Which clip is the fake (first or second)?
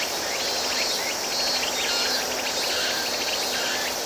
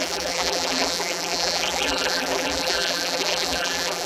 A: second